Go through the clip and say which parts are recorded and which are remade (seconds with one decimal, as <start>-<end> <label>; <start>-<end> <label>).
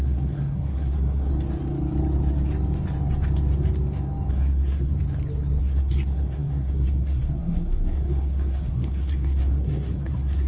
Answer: 0.0-1.3 remade; 1.3-4.3 recorded; 4.3-4.9 remade; 4.9-5.6 recorded; 5.6-10.5 remade